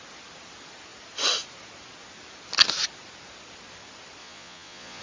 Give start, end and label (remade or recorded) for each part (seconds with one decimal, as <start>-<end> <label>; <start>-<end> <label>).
0.0-4.2 recorded; 4.2-5.0 remade